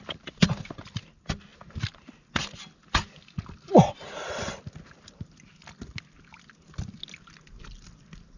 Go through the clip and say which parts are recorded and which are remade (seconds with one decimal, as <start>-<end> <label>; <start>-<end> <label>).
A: 0.0-8.4 recorded